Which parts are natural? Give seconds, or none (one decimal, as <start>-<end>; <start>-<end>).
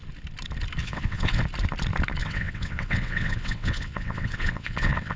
0.0-0.8; 1.4-2.2